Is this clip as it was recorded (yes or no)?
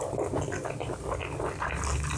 yes